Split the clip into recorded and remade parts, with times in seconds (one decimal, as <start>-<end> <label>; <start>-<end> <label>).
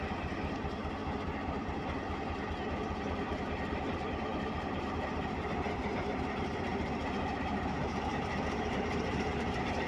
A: 0.0-1.0 remade; 1.0-2.8 recorded; 2.8-9.9 remade